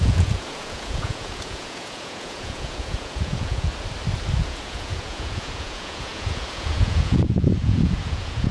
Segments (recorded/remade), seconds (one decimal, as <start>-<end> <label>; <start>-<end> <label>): 0.0-3.7 remade; 3.7-4.4 recorded; 4.4-8.5 remade